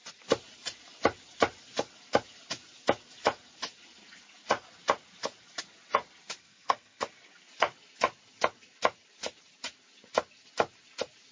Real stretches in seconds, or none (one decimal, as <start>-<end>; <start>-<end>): 0.0-6.4; 7.0-11.3